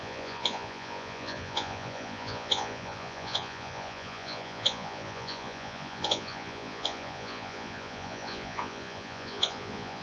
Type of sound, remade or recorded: remade